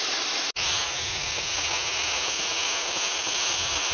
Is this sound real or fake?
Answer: real